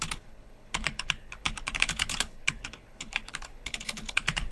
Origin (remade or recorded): remade